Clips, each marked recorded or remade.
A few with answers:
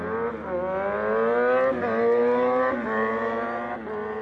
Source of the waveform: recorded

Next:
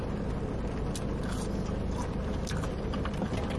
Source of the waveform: recorded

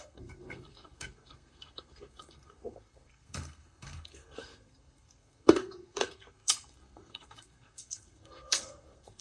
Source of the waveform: remade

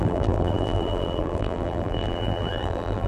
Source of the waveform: remade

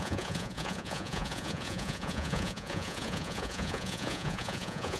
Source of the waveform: remade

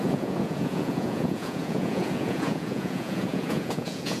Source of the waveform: remade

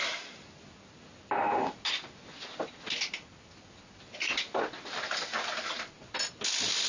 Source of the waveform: recorded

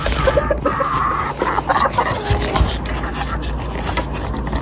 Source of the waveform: recorded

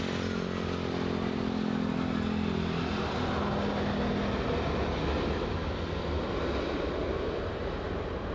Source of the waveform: recorded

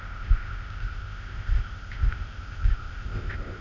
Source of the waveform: remade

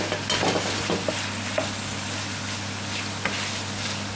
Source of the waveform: recorded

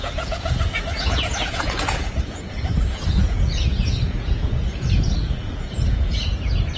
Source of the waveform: remade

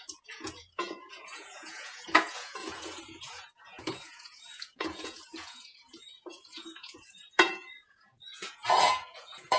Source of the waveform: remade